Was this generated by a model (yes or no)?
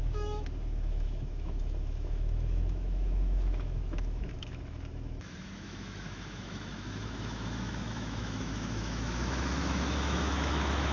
yes